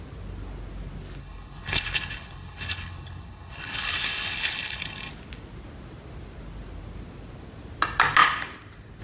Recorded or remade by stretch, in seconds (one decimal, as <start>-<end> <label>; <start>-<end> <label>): 0.0-1.2 recorded; 1.2-5.1 remade; 5.1-9.0 recorded